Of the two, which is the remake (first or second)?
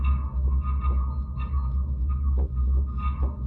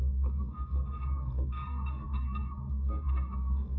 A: second